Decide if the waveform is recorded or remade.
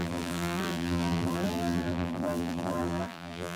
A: remade